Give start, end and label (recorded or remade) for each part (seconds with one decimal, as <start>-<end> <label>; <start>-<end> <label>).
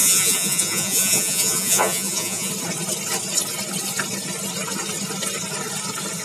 0.0-2.5 remade; 2.5-6.2 recorded